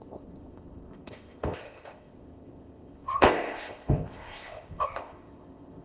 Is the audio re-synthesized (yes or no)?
yes